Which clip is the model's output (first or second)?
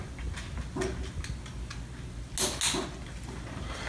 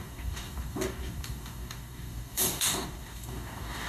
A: second